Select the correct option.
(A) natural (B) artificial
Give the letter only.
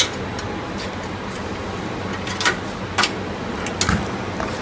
A